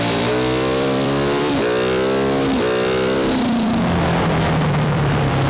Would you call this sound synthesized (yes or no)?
yes